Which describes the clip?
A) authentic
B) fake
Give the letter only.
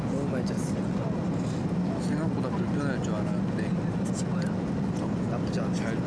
A